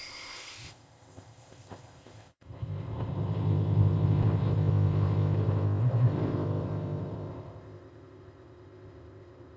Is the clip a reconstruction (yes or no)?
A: yes